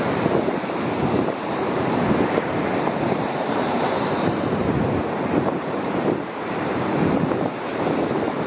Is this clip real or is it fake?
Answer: fake